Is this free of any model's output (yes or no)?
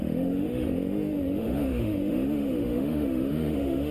no